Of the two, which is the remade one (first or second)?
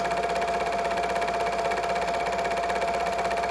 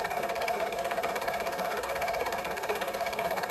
second